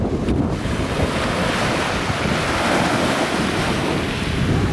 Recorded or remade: recorded